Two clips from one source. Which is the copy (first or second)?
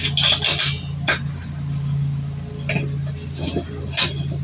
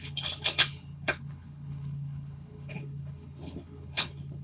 second